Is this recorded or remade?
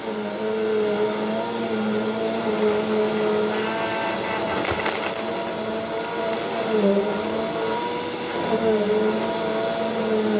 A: recorded